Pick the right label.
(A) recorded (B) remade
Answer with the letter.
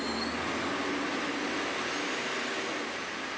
A